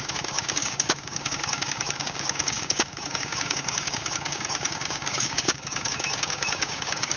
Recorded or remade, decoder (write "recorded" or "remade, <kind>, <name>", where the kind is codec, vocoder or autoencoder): remade, codec, DAC